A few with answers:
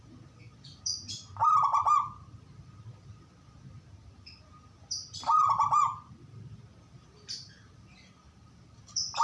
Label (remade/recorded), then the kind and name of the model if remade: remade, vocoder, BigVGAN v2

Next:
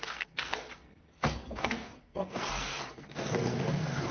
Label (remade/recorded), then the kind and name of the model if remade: remade, codec, SNAC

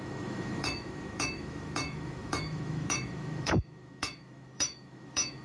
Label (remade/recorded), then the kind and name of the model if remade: remade, autoencoder, DAC-VAE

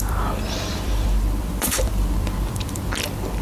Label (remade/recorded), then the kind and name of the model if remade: remade, vocoder, BigVGAN v2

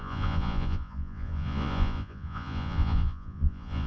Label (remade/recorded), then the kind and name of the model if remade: remade, vocoder, Vocos